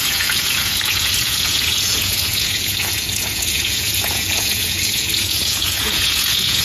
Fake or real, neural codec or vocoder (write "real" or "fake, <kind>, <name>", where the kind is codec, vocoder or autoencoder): fake, vocoder, Vocos